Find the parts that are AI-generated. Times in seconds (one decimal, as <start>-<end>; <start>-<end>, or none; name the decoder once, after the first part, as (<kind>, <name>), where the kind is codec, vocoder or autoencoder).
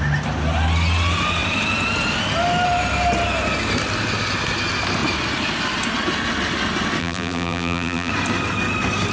7.0-8.1 (vocoder, BigVGAN v2)